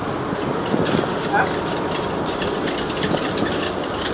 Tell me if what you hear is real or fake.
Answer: real